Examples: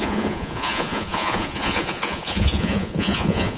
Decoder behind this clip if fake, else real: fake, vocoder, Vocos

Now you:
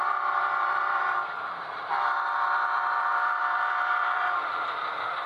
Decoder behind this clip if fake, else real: fake, vocoder, BigVGAN v2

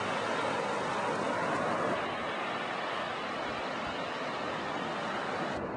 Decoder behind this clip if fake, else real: real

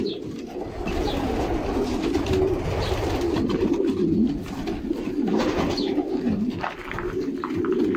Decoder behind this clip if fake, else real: real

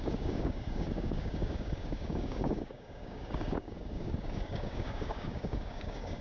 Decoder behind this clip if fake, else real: fake, codec, DAC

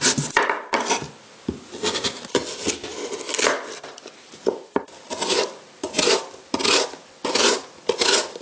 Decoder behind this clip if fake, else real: real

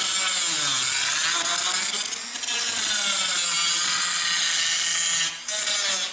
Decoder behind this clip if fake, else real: real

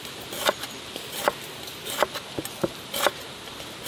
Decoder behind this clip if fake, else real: real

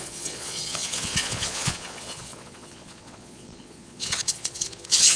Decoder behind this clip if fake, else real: fake, vocoder, Vocos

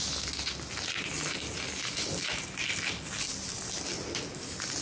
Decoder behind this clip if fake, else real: real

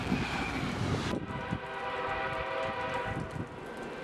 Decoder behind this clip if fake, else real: real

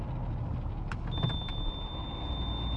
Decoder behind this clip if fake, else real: real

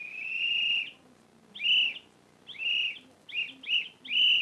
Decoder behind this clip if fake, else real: real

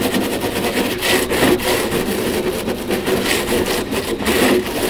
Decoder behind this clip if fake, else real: real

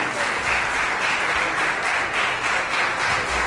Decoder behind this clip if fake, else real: real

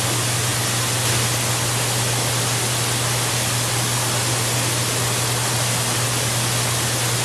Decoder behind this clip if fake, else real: real